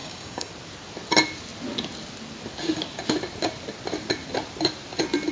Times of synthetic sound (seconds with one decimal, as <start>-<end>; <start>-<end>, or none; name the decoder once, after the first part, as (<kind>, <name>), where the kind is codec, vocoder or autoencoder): 0.0-0.5 (codec, DAC)

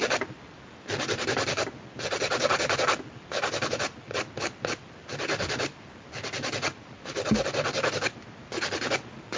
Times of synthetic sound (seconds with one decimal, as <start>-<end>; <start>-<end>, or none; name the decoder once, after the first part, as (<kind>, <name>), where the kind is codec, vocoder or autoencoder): none

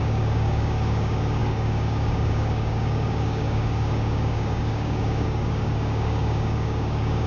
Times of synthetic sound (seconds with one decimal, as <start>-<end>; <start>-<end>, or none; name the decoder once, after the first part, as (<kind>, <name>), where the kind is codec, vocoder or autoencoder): 0.0-7.3 (codec, DAC)

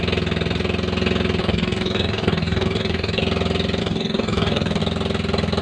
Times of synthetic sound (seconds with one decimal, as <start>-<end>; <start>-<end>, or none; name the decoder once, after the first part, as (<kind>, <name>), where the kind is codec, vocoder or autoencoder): 1.4-3.2 (codec, DAC); 3.8-4.8

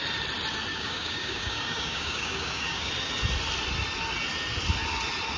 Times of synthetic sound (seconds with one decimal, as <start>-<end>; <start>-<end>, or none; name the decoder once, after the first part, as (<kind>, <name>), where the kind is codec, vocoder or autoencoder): 0.7-2.9 (codec, DAC)

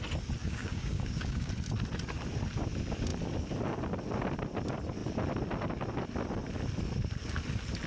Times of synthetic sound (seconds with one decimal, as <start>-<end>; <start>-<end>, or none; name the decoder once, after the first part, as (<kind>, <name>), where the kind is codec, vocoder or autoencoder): 0.4-1.5 (codec, DAC)

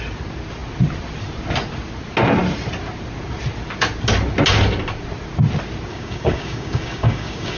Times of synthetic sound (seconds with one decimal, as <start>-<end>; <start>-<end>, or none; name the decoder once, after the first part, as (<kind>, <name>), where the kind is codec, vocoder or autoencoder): 5.9-7.6 (codec, DAC)

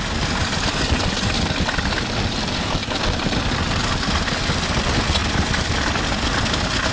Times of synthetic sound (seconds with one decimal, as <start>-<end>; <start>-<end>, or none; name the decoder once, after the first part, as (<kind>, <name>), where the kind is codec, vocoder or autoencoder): none